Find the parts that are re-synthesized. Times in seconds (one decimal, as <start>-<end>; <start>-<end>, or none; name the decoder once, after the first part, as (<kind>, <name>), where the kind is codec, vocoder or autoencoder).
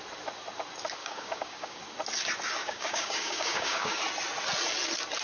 1.0-1.8 (codec, DAC); 2.6-4.0